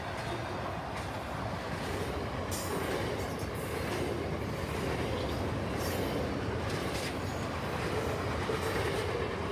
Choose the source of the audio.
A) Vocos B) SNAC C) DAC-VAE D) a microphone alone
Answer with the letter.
D